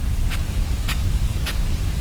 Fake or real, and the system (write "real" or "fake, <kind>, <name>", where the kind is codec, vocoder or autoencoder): fake, codec, DAC